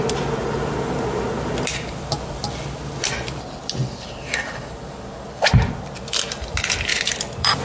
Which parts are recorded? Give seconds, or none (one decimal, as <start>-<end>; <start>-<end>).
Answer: 0.0-6.9